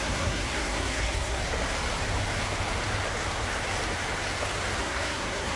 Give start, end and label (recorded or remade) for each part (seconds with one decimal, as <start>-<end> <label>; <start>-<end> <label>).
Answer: 0.0-1.4 remade; 1.4-4.8 recorded; 4.8-5.6 remade